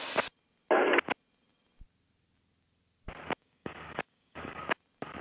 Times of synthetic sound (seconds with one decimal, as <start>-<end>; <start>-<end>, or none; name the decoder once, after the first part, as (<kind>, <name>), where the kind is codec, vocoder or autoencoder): 3.4-4.6 (codec, DAC)